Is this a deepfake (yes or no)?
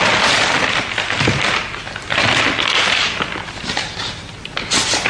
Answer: no